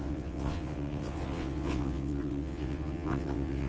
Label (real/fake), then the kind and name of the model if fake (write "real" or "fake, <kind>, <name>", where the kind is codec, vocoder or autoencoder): fake, vocoder, WaveNeXt